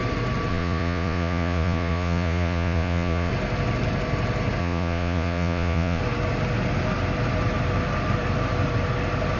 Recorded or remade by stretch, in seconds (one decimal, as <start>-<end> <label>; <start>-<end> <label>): 0.0-0.5 recorded; 0.5-3.3 remade; 3.3-4.6 recorded; 4.6-6.0 remade; 6.0-9.4 recorded